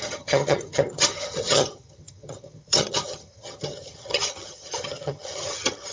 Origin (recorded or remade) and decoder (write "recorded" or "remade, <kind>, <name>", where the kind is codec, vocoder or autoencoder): remade, vocoder, HiFi-GAN